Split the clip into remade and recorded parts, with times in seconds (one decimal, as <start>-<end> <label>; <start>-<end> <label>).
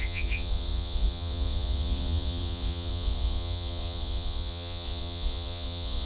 0.0-6.0 remade